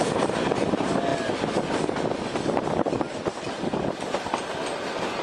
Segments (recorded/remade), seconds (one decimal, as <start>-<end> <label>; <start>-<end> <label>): 0.0-5.2 recorded